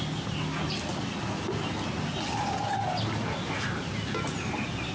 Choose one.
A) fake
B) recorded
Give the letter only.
B